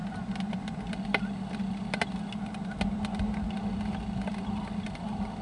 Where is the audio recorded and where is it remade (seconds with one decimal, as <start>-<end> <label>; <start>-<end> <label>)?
0.0-5.4 recorded